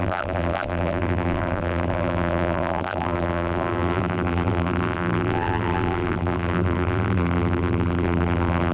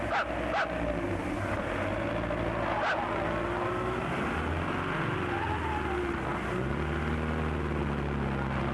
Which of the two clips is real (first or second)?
second